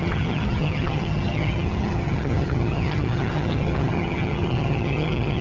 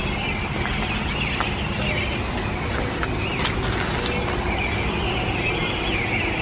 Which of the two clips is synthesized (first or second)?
first